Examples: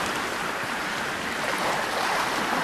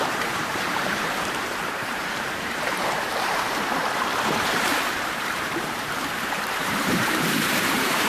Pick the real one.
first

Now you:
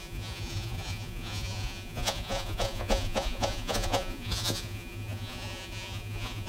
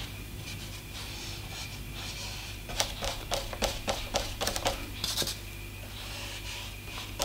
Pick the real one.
second